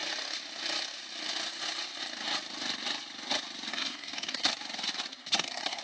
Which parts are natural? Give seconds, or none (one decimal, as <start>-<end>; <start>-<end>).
0.0-3.7; 4.5-5.1